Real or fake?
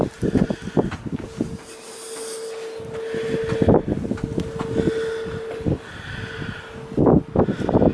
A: real